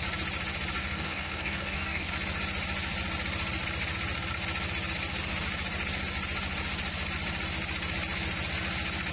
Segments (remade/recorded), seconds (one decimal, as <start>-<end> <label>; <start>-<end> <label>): 0.0-0.8 recorded; 0.8-2.1 remade; 2.1-9.1 recorded